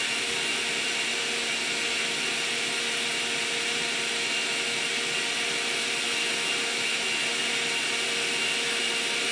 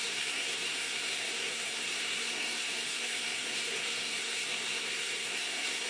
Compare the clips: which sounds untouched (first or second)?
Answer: first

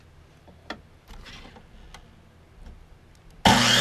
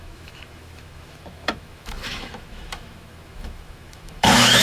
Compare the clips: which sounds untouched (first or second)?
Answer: first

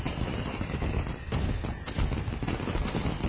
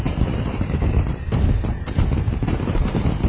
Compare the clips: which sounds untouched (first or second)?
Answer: first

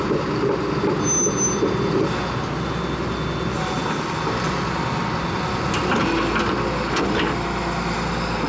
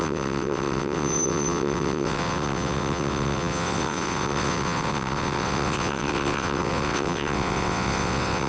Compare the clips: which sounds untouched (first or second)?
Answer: first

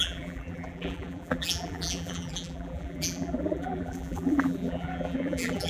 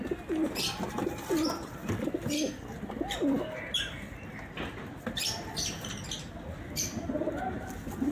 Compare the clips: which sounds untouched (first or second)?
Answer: second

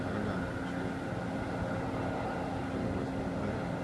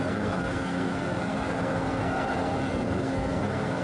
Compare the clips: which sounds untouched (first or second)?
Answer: first